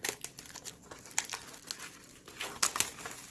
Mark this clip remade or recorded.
recorded